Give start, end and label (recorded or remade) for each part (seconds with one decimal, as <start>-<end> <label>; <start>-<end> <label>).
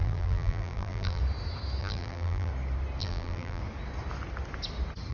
0.0-1.2 remade; 1.2-1.8 recorded; 1.8-2.5 remade; 2.5-3.0 recorded; 3.0-3.6 remade; 3.6-5.1 recorded